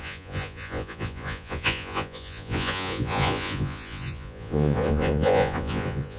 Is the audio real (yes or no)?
no